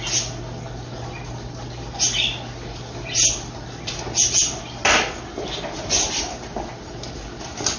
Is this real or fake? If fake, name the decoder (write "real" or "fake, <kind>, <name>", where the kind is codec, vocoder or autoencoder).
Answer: real